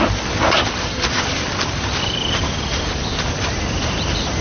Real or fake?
real